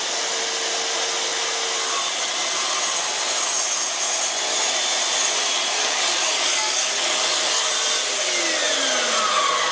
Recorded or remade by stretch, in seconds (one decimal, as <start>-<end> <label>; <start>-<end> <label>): 0.0-5.8 recorded; 5.8-7.7 remade; 7.7-9.7 recorded